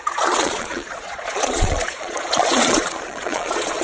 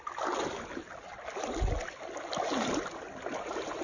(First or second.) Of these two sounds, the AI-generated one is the first